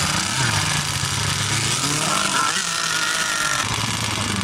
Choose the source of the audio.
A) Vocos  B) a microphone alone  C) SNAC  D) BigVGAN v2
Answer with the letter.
B